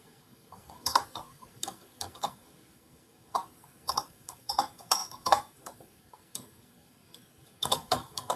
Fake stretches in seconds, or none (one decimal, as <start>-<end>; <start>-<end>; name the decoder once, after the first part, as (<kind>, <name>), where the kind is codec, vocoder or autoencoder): 0.0-8.4 (codec, SNAC)